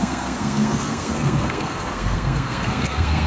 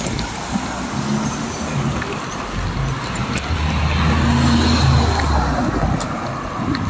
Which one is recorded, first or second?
second